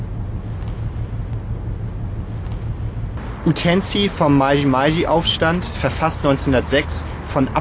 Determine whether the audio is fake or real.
real